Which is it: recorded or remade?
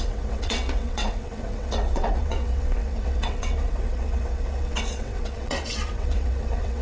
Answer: remade